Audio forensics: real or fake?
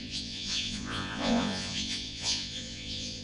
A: fake